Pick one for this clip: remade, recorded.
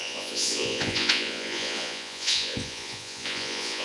remade